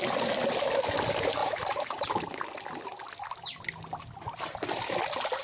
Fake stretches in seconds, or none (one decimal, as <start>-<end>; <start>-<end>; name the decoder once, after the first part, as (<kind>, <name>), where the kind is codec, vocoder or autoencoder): 1.4-2.5 (vocoder, BigVGAN v2)